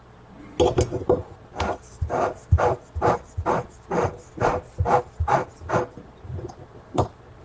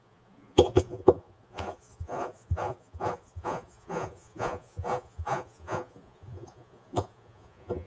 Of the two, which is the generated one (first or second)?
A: second